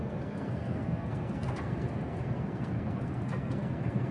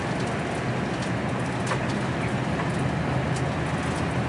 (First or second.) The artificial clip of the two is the first